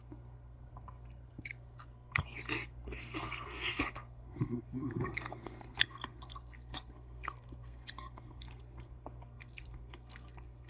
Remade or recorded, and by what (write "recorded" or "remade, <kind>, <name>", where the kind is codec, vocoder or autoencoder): remade, codec, SNAC